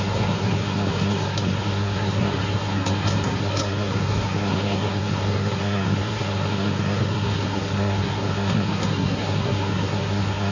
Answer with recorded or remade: remade